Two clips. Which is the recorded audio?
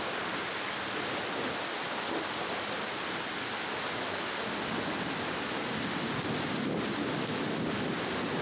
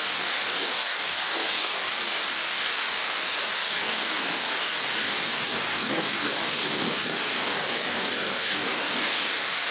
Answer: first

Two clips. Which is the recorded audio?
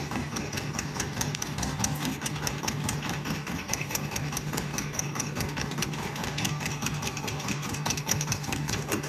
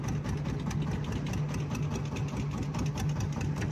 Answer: second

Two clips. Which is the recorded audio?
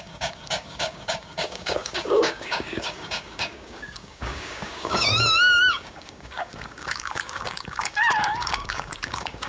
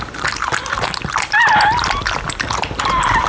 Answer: second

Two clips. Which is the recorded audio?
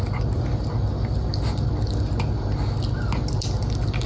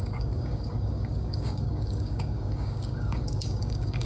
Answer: first